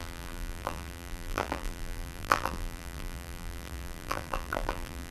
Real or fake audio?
fake